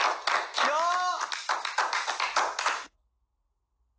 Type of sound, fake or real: real